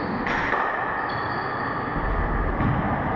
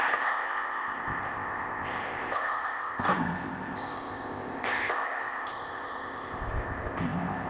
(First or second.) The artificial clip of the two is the second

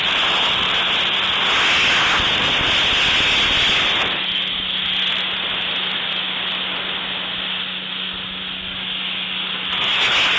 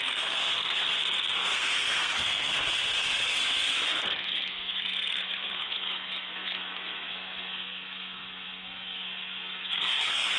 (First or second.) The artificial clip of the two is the second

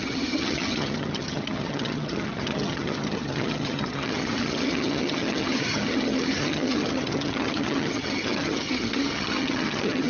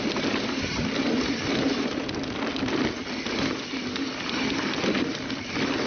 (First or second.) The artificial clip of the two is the first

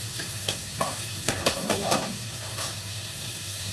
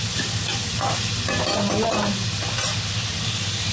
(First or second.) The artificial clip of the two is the first